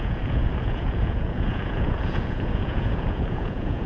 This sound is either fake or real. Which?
fake